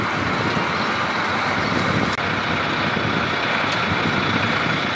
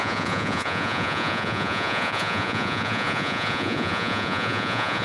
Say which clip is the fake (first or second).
second